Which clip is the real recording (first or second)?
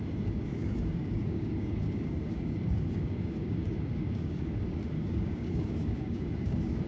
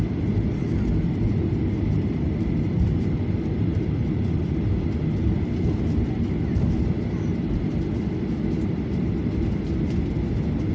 second